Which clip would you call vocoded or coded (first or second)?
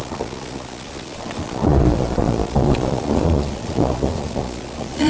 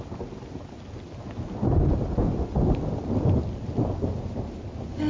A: first